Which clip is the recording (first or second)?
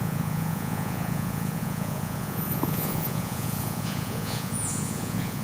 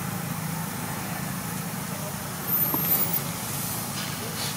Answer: second